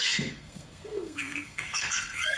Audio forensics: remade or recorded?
remade